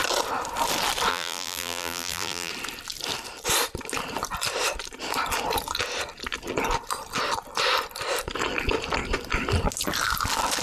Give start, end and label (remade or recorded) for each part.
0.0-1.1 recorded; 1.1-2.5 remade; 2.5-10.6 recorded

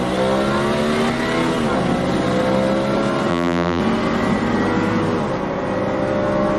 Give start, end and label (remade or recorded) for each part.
0.0-3.3 recorded; 3.3-3.8 remade; 3.8-6.6 recorded

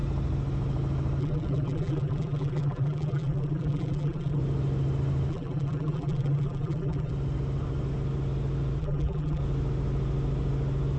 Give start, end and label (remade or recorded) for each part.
0.0-1.2 recorded; 1.2-4.4 remade; 4.4-5.3 recorded; 5.3-7.1 remade; 7.1-8.8 recorded; 8.8-9.4 remade; 9.4-11.0 recorded

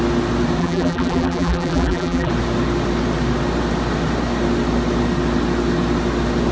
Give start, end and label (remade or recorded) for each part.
0.0-0.6 recorded; 0.6-2.3 remade; 2.3-6.5 recorded

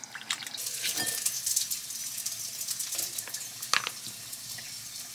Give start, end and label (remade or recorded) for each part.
0.0-2.0 remade; 2.0-5.1 recorded